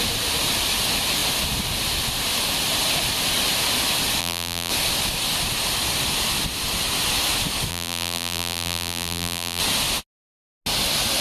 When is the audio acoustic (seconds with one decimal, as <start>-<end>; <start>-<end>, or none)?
0.0-4.2; 4.7-7.7; 9.6-11.2

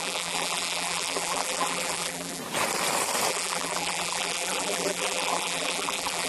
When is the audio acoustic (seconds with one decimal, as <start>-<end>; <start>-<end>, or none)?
2.4-3.3

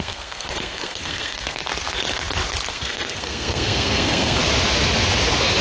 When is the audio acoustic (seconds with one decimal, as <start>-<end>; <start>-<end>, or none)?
1.7-2.7; 4.4-5.6

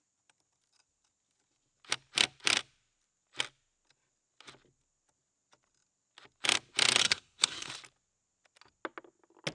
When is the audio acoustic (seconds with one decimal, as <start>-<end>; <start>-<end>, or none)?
0.0-7.0; 7.7-9.5

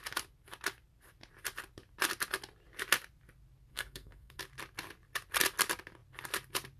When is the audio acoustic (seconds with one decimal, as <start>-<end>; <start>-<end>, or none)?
0.0-3.7; 4.4-6.8